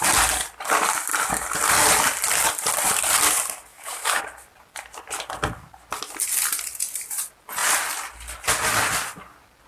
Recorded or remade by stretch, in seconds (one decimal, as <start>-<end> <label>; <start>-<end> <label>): 0.0-3.7 recorded; 3.7-4.2 remade; 4.2-9.7 recorded